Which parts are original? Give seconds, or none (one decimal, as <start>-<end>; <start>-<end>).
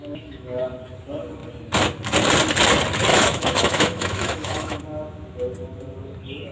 0.6-3.1; 4.8-6.5